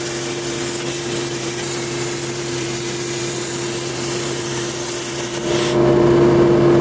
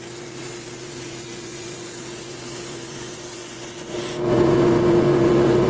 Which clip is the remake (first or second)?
second